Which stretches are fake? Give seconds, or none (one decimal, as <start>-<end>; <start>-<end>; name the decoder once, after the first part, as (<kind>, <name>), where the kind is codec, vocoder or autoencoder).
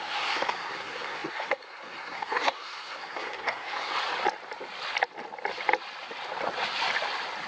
0.0-3.9 (codec, SNAC)